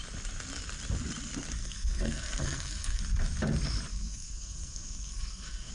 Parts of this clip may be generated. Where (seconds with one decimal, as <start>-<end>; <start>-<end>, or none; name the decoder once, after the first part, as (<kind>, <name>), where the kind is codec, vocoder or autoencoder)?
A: 1.6-3.0 (codec, SNAC); 3.9-5.7